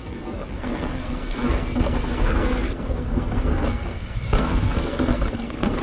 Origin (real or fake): fake